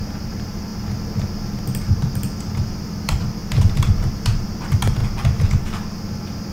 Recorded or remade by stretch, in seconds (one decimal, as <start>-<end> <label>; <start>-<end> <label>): 0.0-0.7 remade; 0.7-2.7 recorded; 2.7-5.0 remade; 5.0-6.5 recorded